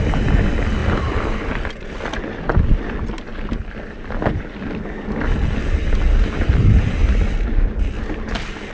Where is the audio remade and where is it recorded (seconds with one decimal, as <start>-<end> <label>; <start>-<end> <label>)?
0.0-0.8 recorded; 0.8-1.5 remade; 1.5-8.7 recorded